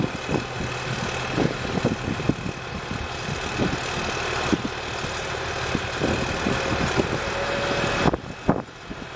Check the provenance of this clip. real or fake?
real